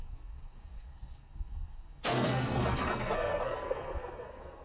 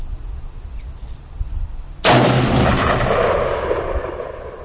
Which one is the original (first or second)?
second